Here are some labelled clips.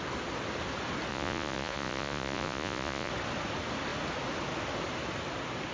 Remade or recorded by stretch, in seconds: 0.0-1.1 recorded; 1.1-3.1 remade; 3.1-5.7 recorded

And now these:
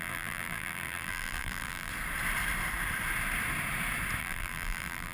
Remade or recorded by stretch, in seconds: 0.0-1.9 remade; 1.9-4.2 recorded; 4.2-5.1 remade

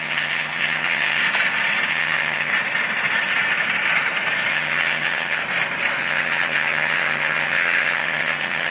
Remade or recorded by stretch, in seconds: 0.0-1.2 remade; 1.2-1.9 recorded; 1.9-2.5 remade; 2.5-4.5 recorded; 4.5-5.4 remade; 5.4-6.0 recorded; 6.0-8.7 remade

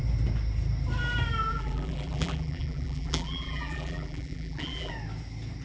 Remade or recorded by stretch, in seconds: 0.0-1.5 recorded; 1.5-4.9 remade; 4.9-5.6 recorded

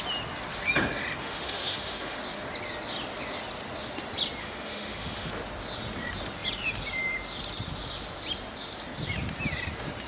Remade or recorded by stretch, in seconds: 0.0-1.2 recorded; 1.2-2.2 remade; 2.2-4.4 recorded; 4.4-5.3 remade; 5.3-10.1 recorded

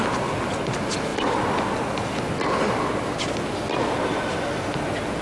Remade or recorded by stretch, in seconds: 0.0-5.2 recorded

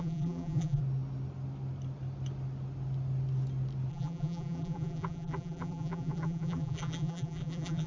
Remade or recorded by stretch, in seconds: 0.0-0.8 remade; 0.8-3.9 recorded; 3.9-7.9 remade